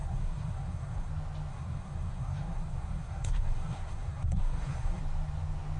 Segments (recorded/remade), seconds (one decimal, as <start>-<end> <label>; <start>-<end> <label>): 0.0-1.1 remade; 1.1-1.5 recorded; 1.5-5.0 remade; 5.0-5.8 recorded